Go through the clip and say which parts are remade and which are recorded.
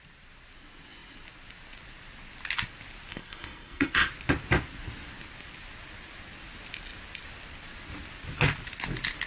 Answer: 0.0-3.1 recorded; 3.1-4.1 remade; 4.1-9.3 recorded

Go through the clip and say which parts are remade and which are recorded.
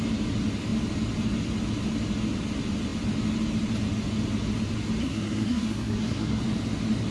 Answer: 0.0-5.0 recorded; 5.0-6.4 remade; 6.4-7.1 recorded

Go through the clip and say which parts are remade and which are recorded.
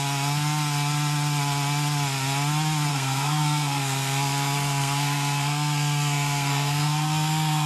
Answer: 0.0-2.9 recorded; 2.9-7.7 remade